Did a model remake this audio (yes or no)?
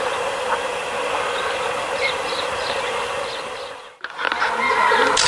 no